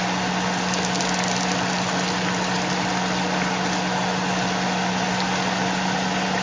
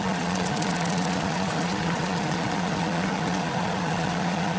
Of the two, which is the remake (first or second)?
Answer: second